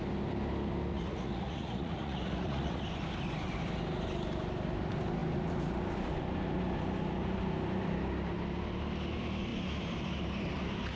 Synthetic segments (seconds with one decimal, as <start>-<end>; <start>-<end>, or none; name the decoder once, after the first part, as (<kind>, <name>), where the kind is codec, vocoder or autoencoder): 0.9-2.8 (vocoder, Vocos)